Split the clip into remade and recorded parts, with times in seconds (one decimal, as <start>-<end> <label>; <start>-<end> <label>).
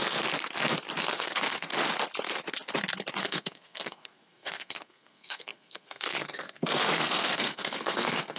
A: 0.0-1.0 recorded; 1.0-1.7 remade; 1.7-3.2 recorded; 3.2-8.4 remade